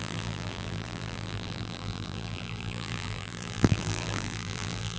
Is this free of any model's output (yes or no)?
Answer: no